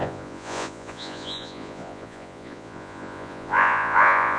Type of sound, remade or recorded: remade